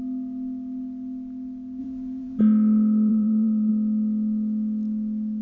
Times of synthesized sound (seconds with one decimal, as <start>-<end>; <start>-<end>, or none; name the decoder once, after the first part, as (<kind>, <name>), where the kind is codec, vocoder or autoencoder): 1.8-2.4 (vocoder, BigVGAN v2); 3.1-3.7